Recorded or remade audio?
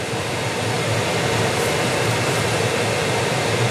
remade